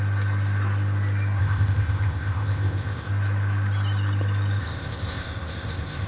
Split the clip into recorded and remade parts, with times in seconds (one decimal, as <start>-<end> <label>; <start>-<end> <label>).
0.0-1.4 recorded; 1.4-3.1 remade; 3.1-4.6 recorded; 4.6-6.1 remade